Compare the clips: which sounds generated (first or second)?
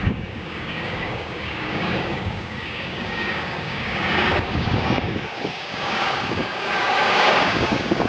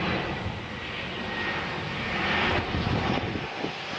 first